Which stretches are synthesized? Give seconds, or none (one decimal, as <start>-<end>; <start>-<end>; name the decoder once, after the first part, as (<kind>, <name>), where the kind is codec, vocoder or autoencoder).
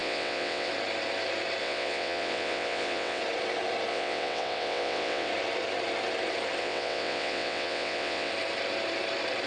0.0-0.7 (vocoder, WaveNeXt); 1.6-3.2; 3.9-5.3; 6.6-8.3